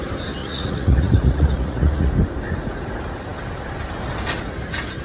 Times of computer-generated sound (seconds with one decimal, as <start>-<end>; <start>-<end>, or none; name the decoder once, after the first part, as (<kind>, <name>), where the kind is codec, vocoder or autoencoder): 0.4-2.1 (vocoder, Vocos)